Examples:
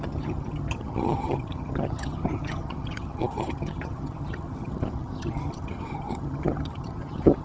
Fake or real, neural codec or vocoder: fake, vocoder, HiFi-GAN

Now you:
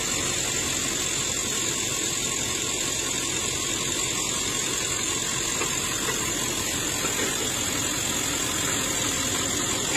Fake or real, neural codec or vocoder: real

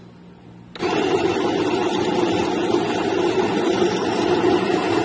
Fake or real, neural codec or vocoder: real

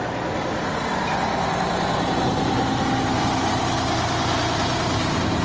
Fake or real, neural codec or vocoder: real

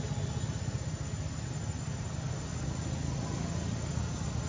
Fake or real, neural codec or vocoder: real